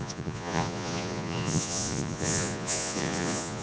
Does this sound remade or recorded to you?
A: remade